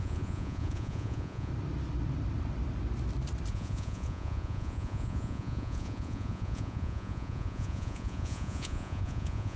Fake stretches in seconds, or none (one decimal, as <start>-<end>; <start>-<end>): 0.0-1.5; 3.5-9.6